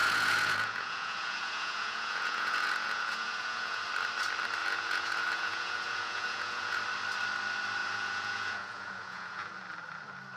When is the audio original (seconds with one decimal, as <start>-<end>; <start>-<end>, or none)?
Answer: 3.8-4.6; 6.8-7.8; 9.5-10.4